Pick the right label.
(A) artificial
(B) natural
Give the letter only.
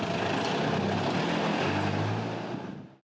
B